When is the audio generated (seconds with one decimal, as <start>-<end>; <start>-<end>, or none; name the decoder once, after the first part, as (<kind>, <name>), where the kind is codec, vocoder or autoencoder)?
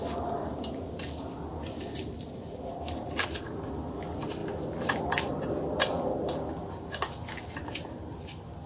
none